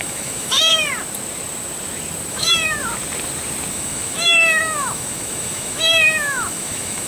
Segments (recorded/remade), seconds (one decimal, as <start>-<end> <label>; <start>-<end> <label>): 0.0-0.7 remade; 0.7-2.3 recorded; 2.3-2.8 remade; 2.8-3.7 recorded; 3.7-7.1 remade